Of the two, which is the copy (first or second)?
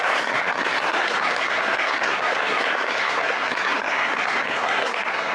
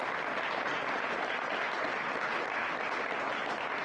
first